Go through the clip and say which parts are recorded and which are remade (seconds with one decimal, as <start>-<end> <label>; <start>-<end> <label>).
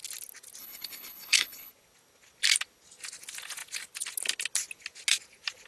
0.0-0.6 recorded; 0.6-1.7 remade; 1.7-5.7 recorded